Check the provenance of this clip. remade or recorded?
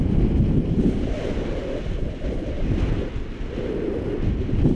recorded